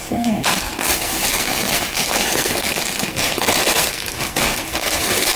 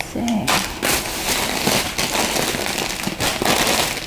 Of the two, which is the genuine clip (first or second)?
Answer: second